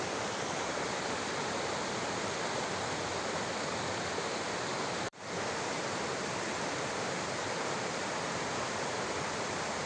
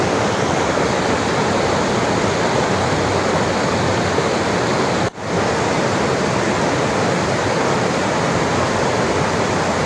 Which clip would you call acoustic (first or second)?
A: second